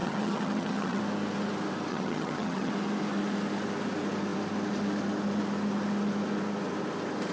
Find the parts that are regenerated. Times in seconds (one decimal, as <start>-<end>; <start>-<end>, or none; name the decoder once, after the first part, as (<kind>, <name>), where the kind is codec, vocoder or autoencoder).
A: 0.0-1.0 (vocoder, HiFi-GAN); 1.9-2.7